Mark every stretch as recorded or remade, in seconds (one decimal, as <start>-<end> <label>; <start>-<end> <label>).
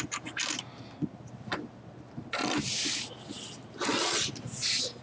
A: 0.0-5.0 recorded